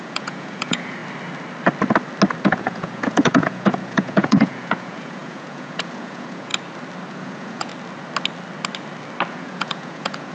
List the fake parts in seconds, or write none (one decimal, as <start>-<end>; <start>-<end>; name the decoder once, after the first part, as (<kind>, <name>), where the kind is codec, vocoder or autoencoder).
0.0-1.0 (vocoder, Vocos); 2.4-6.5; 7.1-7.7; 9.3-10.3